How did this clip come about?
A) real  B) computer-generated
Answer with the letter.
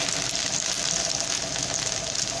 A